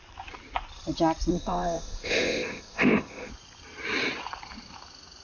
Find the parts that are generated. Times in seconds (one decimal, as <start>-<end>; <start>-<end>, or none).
1.3-3.3